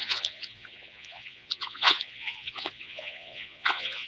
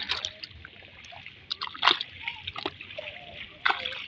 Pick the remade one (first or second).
first